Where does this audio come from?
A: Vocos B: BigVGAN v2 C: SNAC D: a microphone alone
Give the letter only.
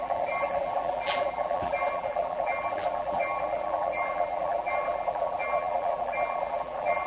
B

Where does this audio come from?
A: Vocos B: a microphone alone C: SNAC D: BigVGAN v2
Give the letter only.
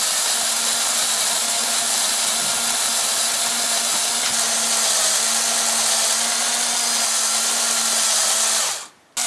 B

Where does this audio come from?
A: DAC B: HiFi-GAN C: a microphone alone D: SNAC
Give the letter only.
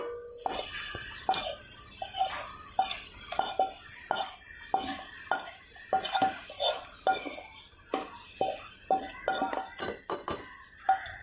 C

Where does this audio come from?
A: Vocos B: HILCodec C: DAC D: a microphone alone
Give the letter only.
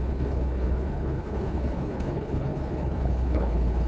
B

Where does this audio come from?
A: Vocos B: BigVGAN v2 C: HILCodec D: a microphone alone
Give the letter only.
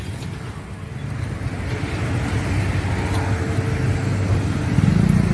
D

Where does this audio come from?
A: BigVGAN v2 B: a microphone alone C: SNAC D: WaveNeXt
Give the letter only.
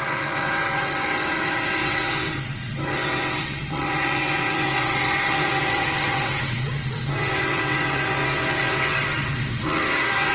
D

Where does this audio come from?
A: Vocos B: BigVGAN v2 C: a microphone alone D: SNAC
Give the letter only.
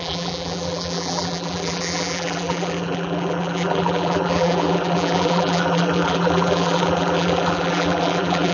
B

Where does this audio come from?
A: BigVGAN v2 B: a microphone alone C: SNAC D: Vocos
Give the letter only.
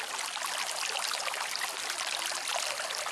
B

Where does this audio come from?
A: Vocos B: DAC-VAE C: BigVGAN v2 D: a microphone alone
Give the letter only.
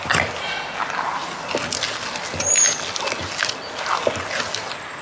D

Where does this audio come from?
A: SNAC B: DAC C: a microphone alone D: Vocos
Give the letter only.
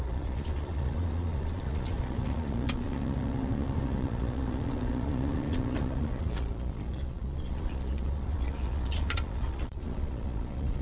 D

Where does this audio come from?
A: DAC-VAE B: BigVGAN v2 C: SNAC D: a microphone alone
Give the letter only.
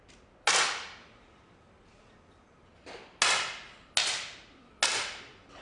D